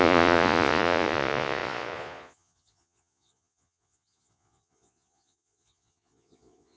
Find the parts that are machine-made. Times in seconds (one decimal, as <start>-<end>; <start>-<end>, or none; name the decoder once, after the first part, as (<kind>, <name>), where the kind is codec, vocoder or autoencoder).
0.0-6.8 (vocoder, Vocos)